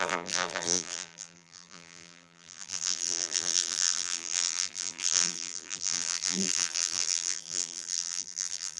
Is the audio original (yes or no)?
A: no